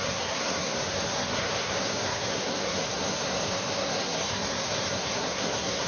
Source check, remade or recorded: remade